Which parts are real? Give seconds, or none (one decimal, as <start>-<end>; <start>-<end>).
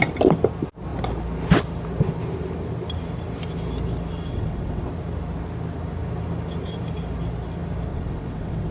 0.0-4.3; 4.9-7.9